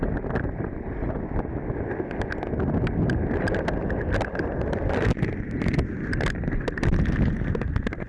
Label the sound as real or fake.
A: real